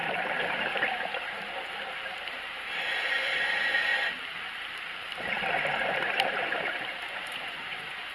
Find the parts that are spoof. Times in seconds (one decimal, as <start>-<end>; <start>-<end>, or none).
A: 2.3-3.9; 7.1-8.1